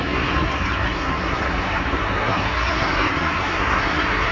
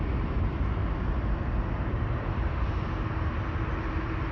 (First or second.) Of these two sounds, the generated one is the first